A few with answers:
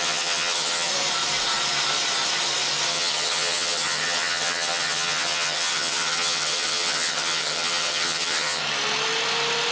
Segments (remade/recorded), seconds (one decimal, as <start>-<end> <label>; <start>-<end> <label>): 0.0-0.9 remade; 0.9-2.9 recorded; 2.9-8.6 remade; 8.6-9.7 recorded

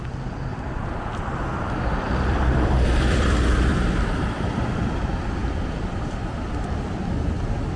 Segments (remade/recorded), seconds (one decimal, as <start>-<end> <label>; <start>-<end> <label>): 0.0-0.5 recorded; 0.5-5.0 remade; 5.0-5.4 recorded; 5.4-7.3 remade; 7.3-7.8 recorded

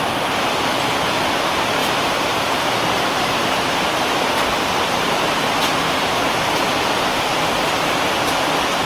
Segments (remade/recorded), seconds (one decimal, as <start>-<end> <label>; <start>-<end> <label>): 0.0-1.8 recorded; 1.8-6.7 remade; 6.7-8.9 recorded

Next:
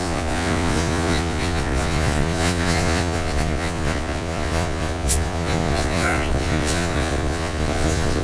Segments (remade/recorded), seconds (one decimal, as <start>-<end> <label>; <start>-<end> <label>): 0.0-8.2 remade

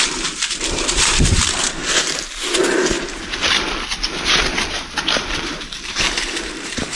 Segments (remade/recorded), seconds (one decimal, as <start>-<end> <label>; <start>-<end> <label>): 0.0-1.8 remade; 1.8-5.2 recorded; 5.2-7.0 remade

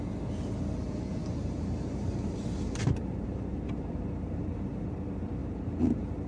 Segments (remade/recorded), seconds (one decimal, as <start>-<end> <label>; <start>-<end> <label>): 0.0-1.2 recorded; 1.2-4.9 remade; 4.9-5.4 recorded; 5.4-6.3 remade

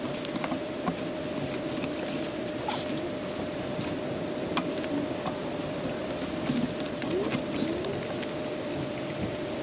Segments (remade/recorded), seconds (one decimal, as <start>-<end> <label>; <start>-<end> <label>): 0.0-9.6 recorded